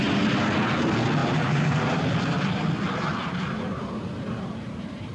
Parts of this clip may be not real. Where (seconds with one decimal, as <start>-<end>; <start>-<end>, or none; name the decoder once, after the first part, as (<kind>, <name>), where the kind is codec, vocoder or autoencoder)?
1.2-2.0 (vocoder, BigVGAN v2); 3.2-5.1